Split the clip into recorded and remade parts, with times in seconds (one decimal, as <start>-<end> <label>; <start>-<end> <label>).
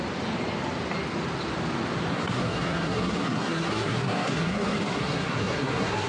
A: 0.0-2.1 recorded; 2.1-6.1 remade